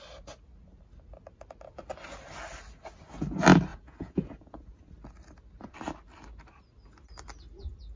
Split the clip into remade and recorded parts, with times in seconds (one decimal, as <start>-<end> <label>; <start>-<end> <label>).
0.0-3.7 recorded; 3.7-4.9 remade; 4.9-8.0 recorded

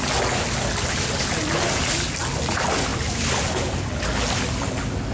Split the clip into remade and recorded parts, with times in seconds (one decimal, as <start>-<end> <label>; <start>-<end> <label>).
0.0-5.1 recorded

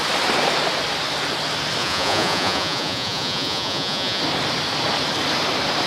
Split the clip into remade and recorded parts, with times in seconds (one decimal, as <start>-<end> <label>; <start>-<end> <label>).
0.0-1.8 recorded; 1.8-4.2 remade; 4.2-5.9 recorded

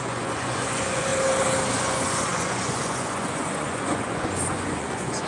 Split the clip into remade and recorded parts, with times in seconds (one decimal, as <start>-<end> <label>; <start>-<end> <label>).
0.0-1.1 remade; 1.1-1.7 recorded; 1.7-5.3 remade

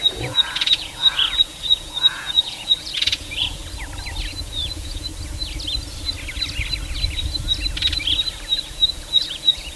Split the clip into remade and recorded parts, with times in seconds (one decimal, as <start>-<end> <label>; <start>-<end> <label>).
0.0-3.6 remade; 3.6-4.3 recorded; 4.3-5.1 remade; 5.1-8.7 recorded; 8.7-9.8 remade

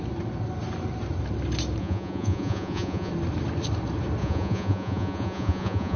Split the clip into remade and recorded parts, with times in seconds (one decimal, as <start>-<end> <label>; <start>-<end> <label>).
0.0-1.8 recorded; 1.8-3.1 remade; 3.1-4.2 recorded; 4.2-6.0 remade

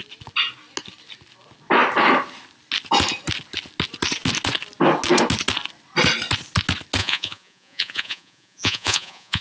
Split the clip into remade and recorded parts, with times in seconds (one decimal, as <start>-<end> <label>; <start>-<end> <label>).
0.0-7.0 recorded; 7.0-9.4 remade

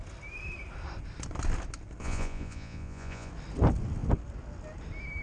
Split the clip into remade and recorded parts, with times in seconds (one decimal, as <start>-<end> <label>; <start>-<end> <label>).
0.0-2.0 recorded; 2.0-3.3 remade; 3.3-5.2 recorded